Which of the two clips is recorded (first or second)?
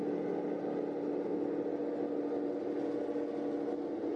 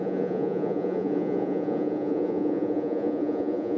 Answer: first